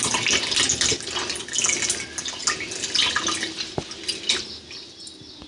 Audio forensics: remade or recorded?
recorded